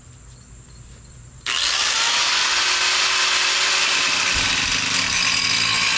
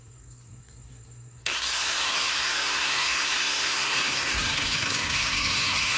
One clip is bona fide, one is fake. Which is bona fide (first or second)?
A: first